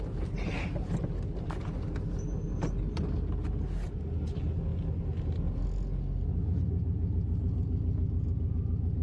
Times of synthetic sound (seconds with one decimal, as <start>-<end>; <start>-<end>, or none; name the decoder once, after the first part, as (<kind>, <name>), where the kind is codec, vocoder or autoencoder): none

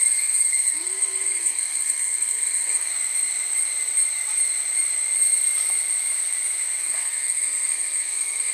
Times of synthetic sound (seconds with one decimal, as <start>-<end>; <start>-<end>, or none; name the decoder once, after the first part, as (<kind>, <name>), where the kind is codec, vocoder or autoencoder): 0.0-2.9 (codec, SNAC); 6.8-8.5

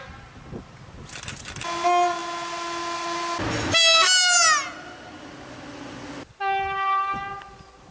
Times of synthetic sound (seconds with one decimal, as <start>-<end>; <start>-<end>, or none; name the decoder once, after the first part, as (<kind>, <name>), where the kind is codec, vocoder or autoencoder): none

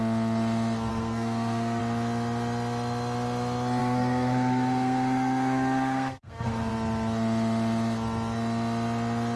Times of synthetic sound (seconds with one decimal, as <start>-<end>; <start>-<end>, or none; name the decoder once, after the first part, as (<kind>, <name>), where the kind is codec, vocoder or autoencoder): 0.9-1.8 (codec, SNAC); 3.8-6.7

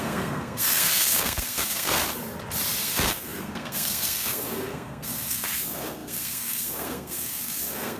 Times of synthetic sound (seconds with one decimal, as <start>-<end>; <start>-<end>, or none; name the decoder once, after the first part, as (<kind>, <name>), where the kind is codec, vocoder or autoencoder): 0.0-2.0 (codec, SNAC); 2.8-8.0

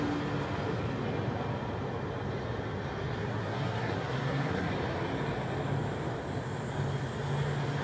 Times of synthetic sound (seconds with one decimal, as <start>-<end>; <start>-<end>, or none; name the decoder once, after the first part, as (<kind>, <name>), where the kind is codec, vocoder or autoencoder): 3.2-4.7 (codec, SNAC)

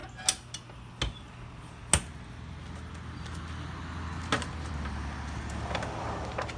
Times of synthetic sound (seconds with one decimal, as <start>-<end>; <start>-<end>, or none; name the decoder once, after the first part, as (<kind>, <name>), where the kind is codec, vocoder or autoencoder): none